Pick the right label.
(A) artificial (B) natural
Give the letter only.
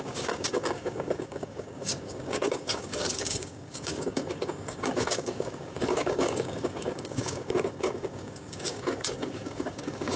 A